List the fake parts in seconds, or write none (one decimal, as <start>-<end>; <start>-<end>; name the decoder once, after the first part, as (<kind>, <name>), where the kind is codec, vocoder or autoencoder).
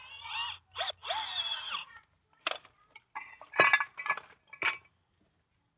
none